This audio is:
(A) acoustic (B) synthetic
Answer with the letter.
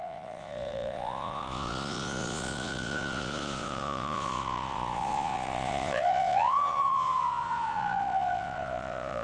B